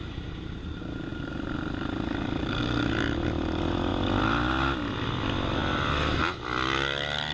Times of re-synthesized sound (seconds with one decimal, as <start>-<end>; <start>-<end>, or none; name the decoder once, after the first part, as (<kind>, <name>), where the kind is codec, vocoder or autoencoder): 3.9-4.5 (vocoder, BigVGAN v2)